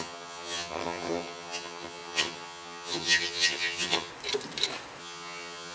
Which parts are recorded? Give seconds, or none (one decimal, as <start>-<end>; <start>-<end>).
4.1-5.0